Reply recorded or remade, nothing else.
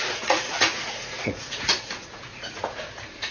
remade